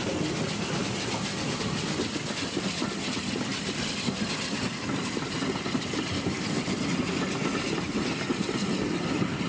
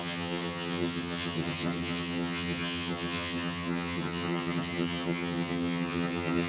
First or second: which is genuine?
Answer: first